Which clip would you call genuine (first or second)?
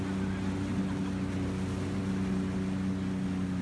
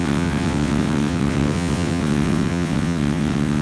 first